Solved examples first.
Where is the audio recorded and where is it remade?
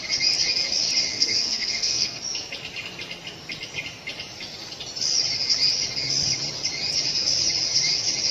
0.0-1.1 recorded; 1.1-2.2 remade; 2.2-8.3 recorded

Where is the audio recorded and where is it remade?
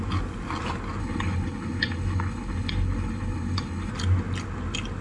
0.0-1.0 recorded; 1.0-3.9 remade; 3.9-5.0 recorded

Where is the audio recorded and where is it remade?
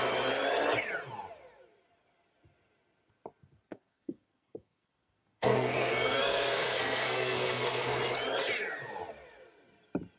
0.0-3.7 recorded; 3.7-8.0 remade; 8.0-10.2 recorded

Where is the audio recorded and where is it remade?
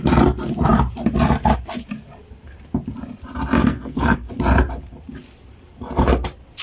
0.0-3.6 recorded; 3.6-4.3 remade; 4.3-6.6 recorded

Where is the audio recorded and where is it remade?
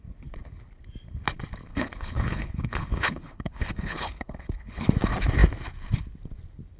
0.0-1.7 recorded; 1.7-4.8 remade; 4.8-6.8 recorded